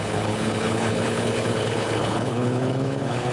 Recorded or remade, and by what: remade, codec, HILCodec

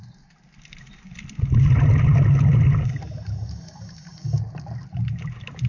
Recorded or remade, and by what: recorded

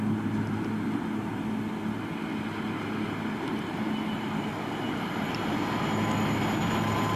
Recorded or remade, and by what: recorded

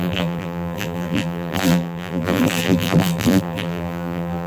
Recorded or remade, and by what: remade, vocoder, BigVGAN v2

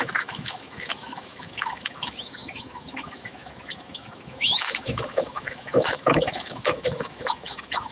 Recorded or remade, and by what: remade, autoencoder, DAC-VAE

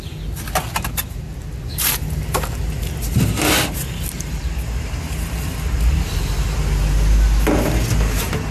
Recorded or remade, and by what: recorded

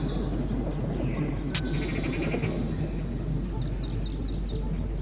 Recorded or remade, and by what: recorded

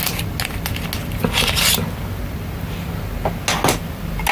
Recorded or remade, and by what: recorded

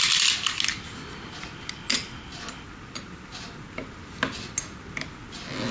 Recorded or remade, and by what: recorded